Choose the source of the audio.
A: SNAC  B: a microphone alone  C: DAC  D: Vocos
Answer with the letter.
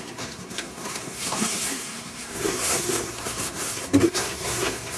A